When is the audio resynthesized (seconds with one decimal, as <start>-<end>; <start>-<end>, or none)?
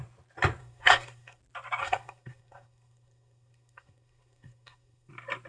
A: 0.6-1.4; 1.8-5.1